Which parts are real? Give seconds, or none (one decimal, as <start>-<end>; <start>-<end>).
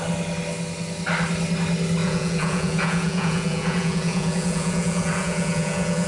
0.0-2.0